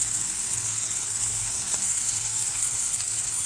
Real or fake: fake